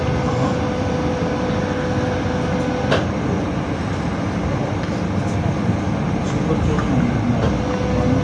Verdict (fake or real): real